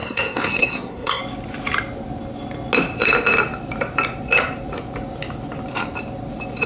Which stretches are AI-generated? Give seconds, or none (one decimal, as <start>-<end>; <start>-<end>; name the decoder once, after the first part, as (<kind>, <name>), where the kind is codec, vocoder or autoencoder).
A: 0.0-1.2 (codec, SNAC)